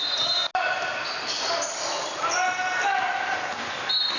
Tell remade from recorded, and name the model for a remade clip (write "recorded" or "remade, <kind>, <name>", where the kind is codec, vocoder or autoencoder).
recorded